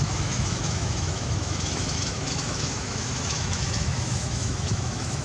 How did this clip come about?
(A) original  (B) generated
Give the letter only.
B